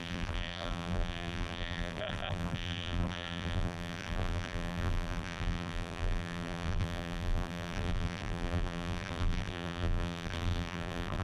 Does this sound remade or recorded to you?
remade